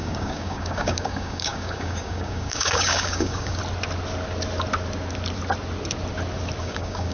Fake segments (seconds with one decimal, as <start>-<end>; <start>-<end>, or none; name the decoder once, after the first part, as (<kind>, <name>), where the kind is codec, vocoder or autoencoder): 0.0-3.6 (codec, DAC); 6.6-7.1